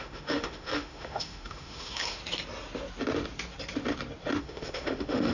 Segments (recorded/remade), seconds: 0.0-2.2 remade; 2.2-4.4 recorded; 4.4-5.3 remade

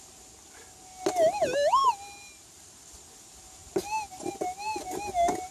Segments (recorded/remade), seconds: 0.0-5.5 recorded

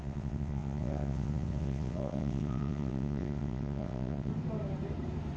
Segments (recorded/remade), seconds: 0.0-4.3 remade; 4.3-5.4 recorded

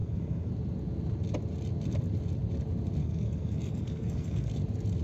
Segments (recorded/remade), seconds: 0.0-0.5 remade; 0.5-3.0 recorded; 3.0-4.5 remade; 4.5-5.0 recorded

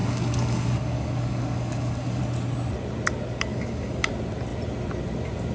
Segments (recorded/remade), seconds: 0.0-2.2 remade; 2.2-3.5 recorded; 3.5-4.1 remade; 4.1-5.5 recorded

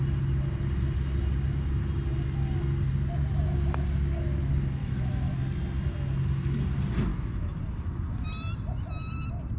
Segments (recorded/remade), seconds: 0.0-4.8 recorded; 4.8-5.3 remade; 5.3-7.1 recorded; 7.1-7.6 remade; 7.6-9.6 recorded

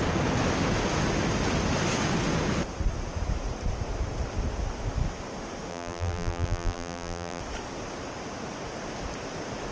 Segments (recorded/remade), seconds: 0.0-5.7 recorded; 5.7-7.4 remade; 7.4-9.7 recorded